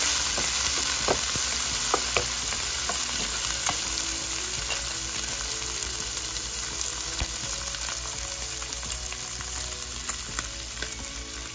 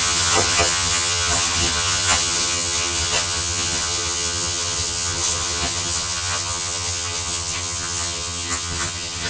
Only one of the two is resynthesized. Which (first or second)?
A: second